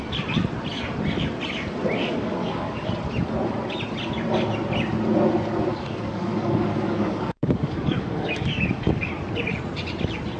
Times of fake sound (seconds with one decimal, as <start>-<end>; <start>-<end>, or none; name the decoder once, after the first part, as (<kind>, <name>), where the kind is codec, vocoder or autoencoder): 2.0-2.9 (codec, DAC); 5.7-9.1